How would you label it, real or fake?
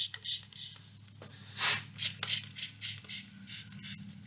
real